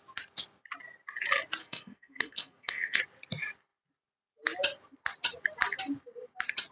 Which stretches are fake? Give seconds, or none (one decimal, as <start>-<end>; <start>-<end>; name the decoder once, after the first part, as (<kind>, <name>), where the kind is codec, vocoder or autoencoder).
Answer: 1.6-3.0 (codec, SNAC)